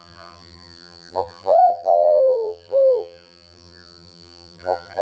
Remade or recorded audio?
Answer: remade